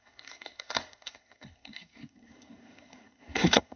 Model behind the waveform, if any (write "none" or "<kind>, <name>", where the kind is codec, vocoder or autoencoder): codec, SNAC